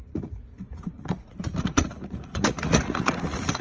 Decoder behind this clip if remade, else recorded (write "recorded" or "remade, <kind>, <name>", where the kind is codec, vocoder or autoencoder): remade, vocoder, Vocos